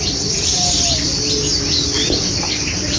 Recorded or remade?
recorded